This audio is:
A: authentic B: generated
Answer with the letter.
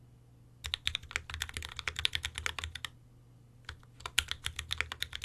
A